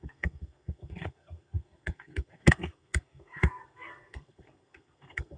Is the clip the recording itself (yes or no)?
no